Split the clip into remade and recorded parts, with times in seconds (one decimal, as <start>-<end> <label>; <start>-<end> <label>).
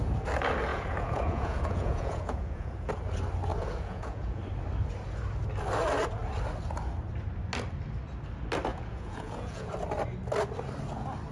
0.0-0.7 recorded; 0.7-2.9 remade; 2.9-3.5 recorded; 3.5-4.4 remade; 4.4-8.7 recorded; 8.7-9.7 remade; 9.7-11.3 recorded